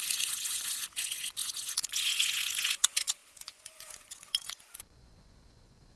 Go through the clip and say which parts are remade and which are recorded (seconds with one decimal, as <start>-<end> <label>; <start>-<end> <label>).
0.0-6.0 remade